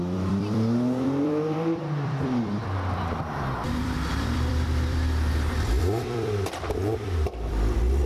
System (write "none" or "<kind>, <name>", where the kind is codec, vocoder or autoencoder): vocoder, BigVGAN v2